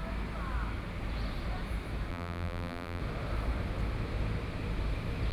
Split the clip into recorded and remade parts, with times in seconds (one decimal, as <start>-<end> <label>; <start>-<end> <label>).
0.0-2.1 recorded; 2.1-3.0 remade; 3.0-5.3 recorded

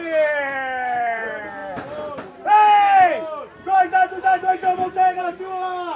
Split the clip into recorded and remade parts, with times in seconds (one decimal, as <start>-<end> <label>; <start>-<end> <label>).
0.0-6.0 recorded

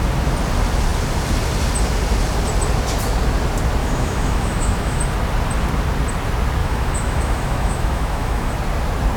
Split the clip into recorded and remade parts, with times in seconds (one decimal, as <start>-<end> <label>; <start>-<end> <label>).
0.0-3.8 recorded; 3.8-5.0 remade; 5.0-6.6 recorded; 6.6-8.5 remade; 8.5-9.2 recorded